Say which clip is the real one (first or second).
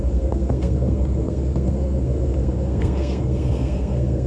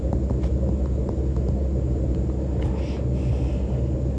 second